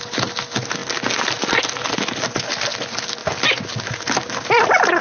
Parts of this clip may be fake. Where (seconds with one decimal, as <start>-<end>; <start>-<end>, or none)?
none

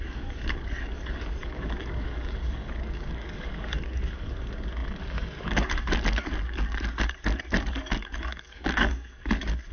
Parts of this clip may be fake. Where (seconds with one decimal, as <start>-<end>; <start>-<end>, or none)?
0.0-9.7

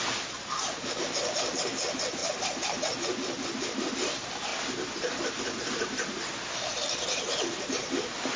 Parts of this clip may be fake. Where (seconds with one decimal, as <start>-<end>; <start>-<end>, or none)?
none